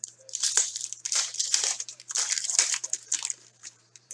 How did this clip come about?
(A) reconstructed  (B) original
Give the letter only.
A